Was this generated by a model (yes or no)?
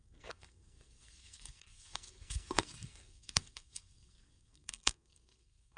yes